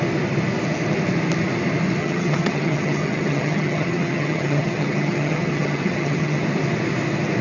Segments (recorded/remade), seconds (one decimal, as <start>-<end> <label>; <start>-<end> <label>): 0.0-2.0 recorded; 2.0-6.4 remade; 6.4-7.4 recorded